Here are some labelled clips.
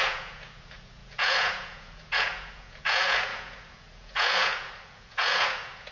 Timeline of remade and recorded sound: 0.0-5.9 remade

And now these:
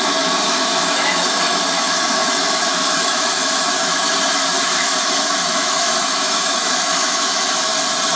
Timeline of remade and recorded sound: 0.0-7.7 remade; 7.7-8.2 recorded